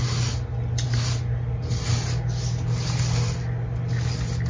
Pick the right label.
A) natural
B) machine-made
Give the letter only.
A